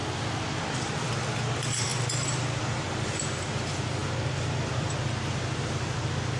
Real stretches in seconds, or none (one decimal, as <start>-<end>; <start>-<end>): 0.0-0.6; 4.0-4.5